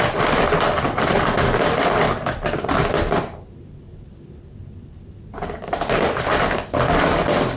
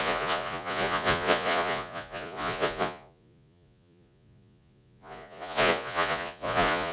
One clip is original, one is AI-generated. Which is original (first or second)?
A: first